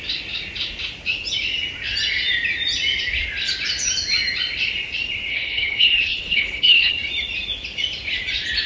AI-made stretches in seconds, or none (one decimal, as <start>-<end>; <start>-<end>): 5.3-6.9